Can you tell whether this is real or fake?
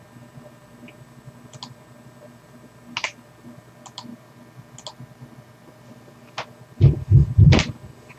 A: real